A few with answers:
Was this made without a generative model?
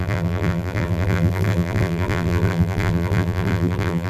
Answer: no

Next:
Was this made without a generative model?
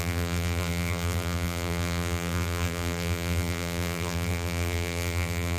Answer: no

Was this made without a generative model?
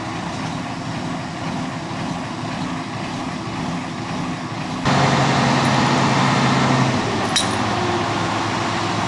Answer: yes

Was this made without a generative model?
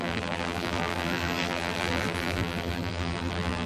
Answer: no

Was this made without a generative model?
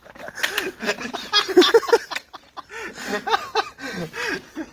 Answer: yes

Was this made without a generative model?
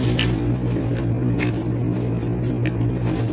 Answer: yes